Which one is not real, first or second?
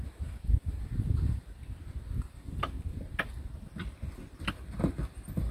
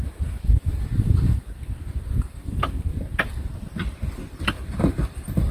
second